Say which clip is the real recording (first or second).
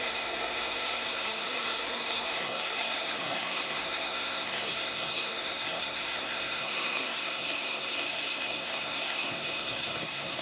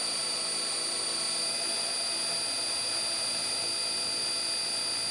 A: second